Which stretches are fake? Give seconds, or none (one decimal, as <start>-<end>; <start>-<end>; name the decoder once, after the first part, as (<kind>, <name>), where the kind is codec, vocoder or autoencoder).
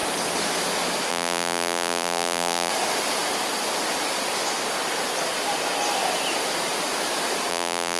1.1-2.7 (vocoder, BigVGAN v2); 7.5-8.0